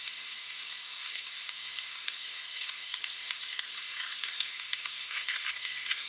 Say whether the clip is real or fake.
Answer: fake